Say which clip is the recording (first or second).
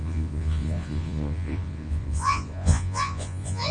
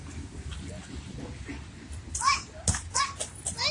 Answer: second